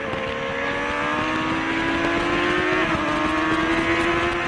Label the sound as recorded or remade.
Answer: recorded